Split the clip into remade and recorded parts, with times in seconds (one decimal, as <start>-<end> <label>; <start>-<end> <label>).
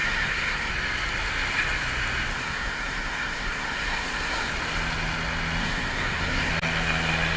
0.0-0.7 remade; 0.7-2.3 recorded; 2.3-4.5 remade; 4.5-5.6 recorded; 5.6-6.5 remade; 6.5-7.4 recorded